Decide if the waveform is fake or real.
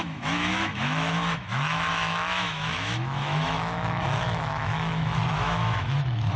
fake